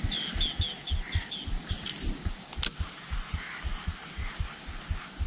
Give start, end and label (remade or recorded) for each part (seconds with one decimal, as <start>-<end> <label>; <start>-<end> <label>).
0.0-5.3 recorded